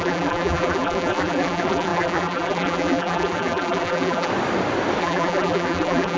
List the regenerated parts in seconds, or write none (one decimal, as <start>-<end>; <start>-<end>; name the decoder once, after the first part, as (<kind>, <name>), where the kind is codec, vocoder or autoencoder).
0.0-4.3 (vocoder, BigVGAN v2); 5.0-6.2